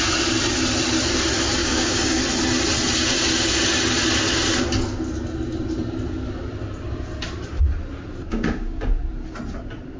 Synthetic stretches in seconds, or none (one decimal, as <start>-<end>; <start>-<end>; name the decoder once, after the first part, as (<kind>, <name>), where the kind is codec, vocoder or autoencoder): 1.6-2.2 (codec, DAC); 8.3-8.9